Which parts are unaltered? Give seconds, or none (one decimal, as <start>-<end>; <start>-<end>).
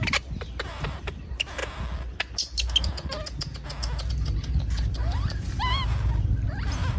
1.6-4.1